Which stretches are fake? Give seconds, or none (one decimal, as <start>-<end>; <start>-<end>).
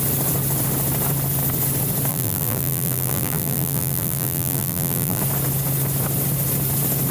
2.1-5.2